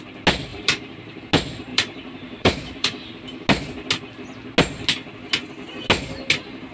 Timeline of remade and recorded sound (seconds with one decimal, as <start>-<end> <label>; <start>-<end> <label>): 0.0-0.5 recorded; 0.5-1.2 remade; 1.2-1.7 recorded; 1.7-3.1 remade; 3.1-6.7 recorded